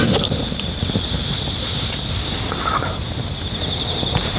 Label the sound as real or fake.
real